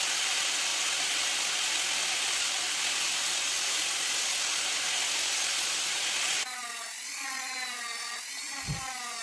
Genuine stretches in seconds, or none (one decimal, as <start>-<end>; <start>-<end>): 0.0-9.2